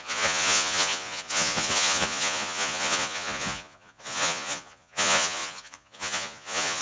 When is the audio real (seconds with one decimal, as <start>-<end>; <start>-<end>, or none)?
none